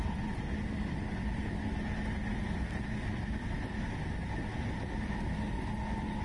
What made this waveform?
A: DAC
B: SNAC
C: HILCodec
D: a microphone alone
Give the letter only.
D